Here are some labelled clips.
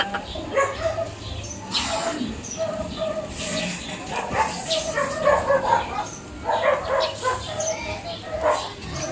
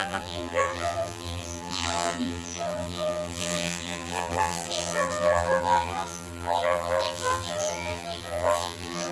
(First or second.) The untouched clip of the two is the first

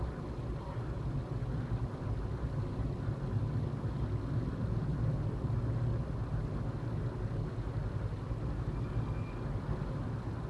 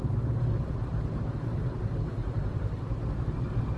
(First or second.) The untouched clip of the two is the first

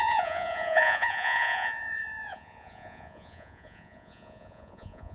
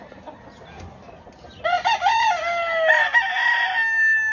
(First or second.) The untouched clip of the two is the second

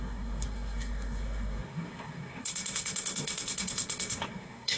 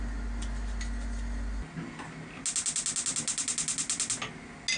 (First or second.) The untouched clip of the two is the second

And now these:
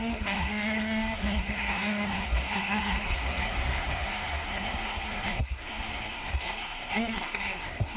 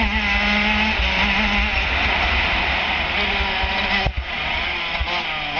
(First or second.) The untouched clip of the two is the second